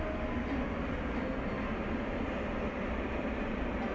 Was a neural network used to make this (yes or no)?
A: no